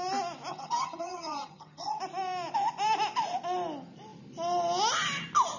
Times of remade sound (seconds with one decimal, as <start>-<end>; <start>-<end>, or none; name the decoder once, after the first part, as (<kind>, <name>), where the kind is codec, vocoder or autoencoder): 0.5-2.0 (vocoder, HiFi-GAN)